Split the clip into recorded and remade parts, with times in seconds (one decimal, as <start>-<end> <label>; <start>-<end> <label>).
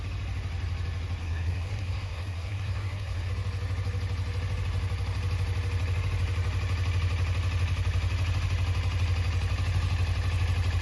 0.0-1.2 recorded; 1.2-3.3 remade; 3.3-10.8 recorded